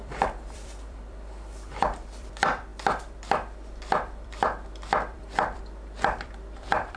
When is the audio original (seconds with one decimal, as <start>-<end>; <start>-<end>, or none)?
none